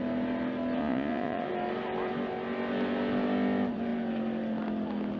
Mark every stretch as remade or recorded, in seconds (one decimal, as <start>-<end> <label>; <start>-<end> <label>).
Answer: 0.0-0.8 recorded; 0.8-1.5 remade; 1.5-5.2 recorded